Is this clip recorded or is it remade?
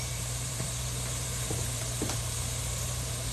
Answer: remade